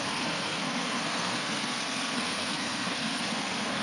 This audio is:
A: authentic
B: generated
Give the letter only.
B